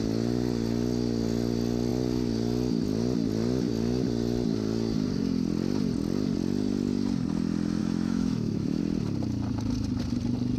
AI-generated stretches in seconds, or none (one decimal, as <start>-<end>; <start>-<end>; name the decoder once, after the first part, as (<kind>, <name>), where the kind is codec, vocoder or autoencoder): 7.8-8.8 (autoencoder, DAC-VAE)